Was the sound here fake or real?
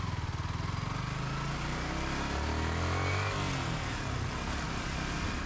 real